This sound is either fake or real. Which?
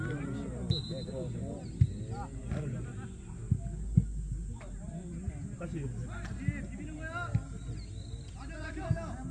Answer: real